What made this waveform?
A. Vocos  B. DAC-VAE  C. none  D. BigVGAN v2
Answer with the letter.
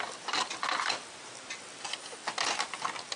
C